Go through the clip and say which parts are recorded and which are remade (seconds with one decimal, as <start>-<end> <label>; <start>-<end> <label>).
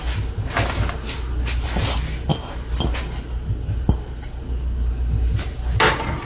0.0-6.2 recorded